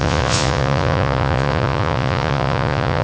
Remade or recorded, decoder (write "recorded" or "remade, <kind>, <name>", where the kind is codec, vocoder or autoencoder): remade, vocoder, Vocos